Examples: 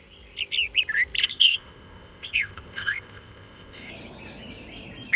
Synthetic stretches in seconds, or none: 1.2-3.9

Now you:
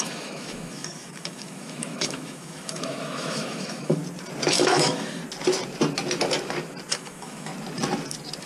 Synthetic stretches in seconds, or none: 0.0-4.0; 4.5-5.2; 6.9-7.5

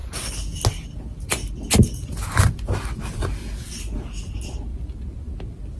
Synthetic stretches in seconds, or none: none

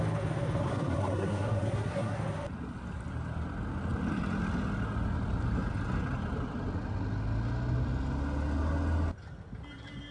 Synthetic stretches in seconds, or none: 0.7-2.2

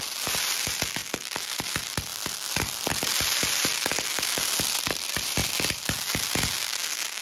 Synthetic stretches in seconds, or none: 0.0-5.4

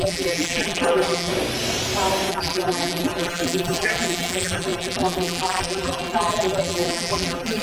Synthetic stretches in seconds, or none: 0.0-1.3; 2.3-7.6

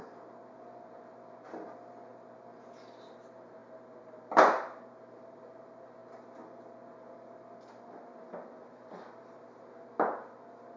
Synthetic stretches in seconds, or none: none

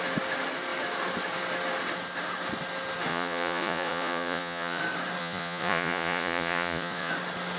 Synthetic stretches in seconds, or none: 3.1-4.8; 5.2-7.1